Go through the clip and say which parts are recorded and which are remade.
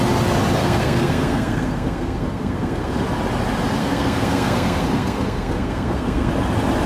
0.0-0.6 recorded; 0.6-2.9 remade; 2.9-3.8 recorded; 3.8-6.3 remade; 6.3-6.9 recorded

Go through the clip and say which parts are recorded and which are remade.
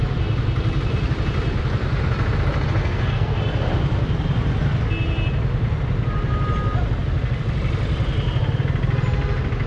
0.0-2.8 recorded; 2.8-3.4 remade; 3.4-9.7 recorded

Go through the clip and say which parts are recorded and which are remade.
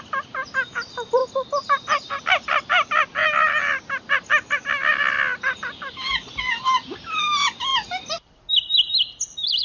0.0-9.6 recorded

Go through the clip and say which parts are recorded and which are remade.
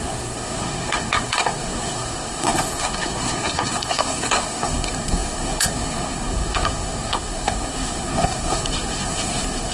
0.0-9.7 remade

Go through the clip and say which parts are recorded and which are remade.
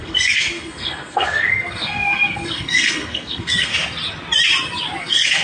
0.0-3.7 remade; 3.7-5.0 recorded; 5.0-5.4 remade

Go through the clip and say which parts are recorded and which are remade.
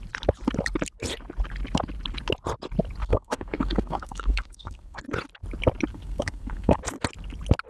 0.0-3.0 recorded; 3.0-5.0 remade; 5.0-5.9 recorded; 5.9-6.8 remade; 6.8-7.7 recorded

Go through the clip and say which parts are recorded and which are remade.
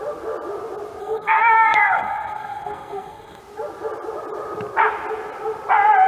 0.0-1.0 recorded; 1.0-3.4 remade; 3.4-6.1 recorded